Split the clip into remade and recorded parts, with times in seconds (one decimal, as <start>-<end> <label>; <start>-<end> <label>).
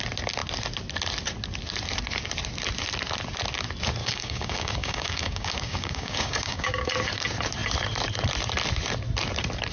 0.0-4.0 recorded; 4.0-6.9 remade; 6.9-9.7 recorded